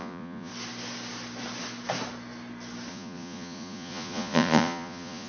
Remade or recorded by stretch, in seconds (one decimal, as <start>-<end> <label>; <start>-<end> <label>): 0.0-0.5 remade; 0.5-2.9 recorded; 2.9-5.3 remade